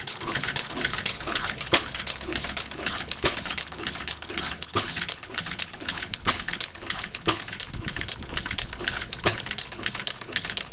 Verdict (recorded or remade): remade